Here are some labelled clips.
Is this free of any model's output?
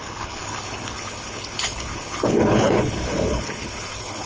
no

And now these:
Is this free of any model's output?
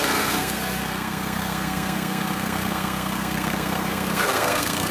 no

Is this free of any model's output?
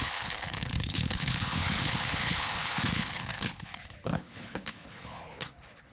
no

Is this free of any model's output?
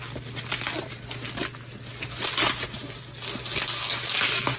yes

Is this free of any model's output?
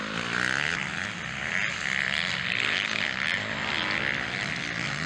yes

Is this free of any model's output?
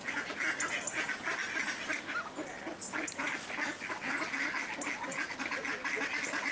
yes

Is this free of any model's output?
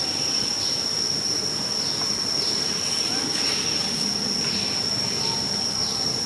yes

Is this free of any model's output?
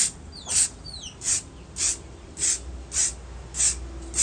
yes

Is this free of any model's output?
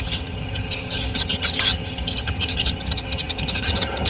no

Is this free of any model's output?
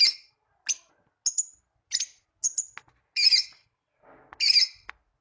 yes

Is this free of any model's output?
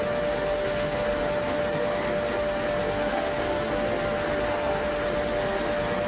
no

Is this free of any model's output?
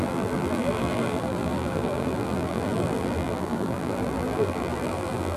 no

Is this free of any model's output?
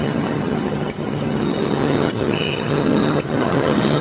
no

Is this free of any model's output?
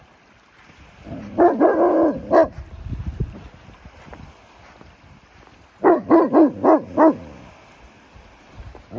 yes